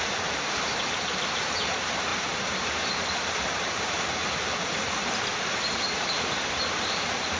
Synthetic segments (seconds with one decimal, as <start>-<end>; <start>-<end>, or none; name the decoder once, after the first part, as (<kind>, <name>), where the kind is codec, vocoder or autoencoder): 0.0-7.4 (vocoder, BigVGAN v2)

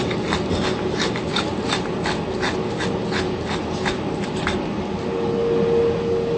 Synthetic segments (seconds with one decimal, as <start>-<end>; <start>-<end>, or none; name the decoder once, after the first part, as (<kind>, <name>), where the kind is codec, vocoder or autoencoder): none

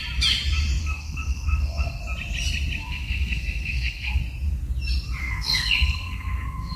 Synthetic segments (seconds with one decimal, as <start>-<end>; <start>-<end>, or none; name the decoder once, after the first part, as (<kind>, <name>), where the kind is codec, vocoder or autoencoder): 0.8-2.0 (codec, SNAC); 2.8-4.2; 5.2-6.8